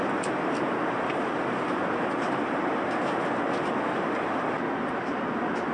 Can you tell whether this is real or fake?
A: real